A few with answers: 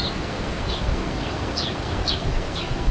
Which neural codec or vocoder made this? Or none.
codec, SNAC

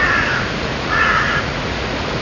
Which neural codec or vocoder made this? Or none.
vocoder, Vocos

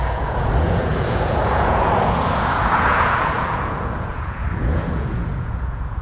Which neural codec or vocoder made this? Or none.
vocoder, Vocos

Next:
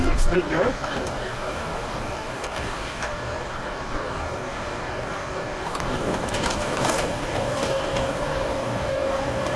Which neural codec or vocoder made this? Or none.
codec, DAC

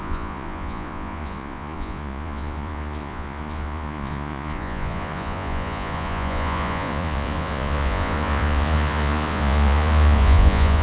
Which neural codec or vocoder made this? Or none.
vocoder, Vocos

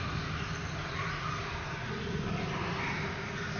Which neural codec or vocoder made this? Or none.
none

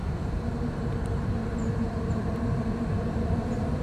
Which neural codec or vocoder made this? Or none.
vocoder, BigVGAN v2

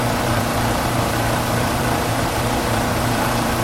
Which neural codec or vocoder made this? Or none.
vocoder, BigVGAN v2